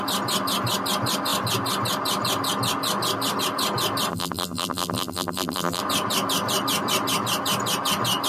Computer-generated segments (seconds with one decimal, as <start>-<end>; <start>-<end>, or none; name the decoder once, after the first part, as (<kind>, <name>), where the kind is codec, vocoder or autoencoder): 4.1-5.8 (vocoder, BigVGAN v2)